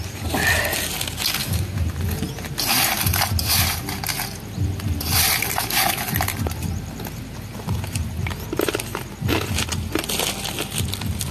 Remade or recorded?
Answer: recorded